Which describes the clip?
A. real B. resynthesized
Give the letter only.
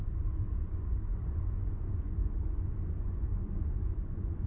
B